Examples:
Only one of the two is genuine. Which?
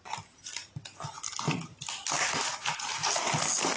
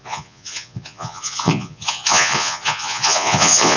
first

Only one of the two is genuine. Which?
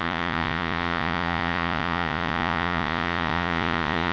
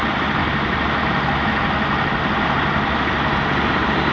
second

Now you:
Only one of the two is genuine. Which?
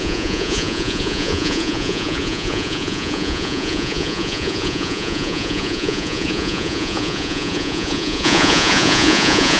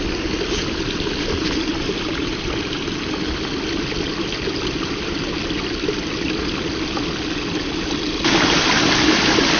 second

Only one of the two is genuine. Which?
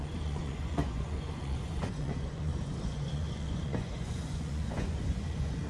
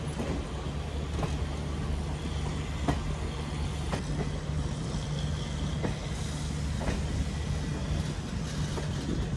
second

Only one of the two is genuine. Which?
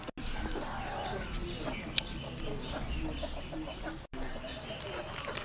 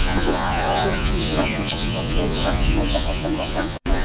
first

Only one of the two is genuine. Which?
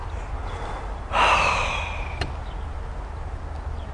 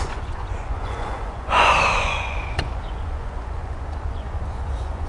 first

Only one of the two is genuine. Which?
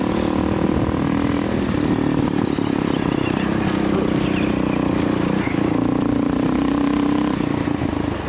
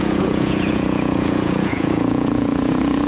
first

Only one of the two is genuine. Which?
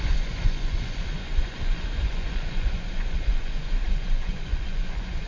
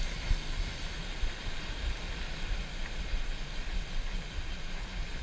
second